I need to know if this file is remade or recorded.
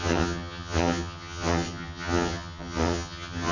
remade